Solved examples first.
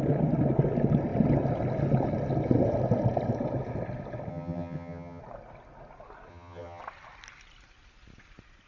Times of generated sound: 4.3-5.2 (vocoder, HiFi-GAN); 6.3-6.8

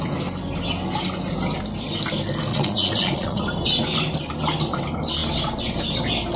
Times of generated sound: 2.5-3.4 (vocoder, Vocos)

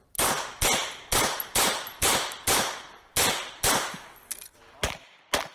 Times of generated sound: none

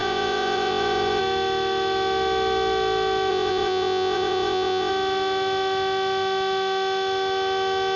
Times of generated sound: 0.0-1.2 (vocoder, Vocos); 3.3-4.9

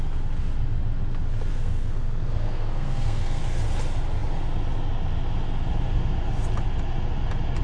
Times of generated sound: 1.5-3.4 (codec, SNAC)

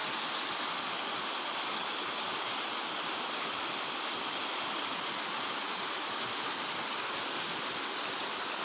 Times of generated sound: none